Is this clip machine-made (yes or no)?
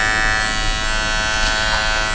no